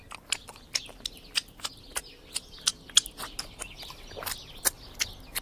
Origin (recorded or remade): recorded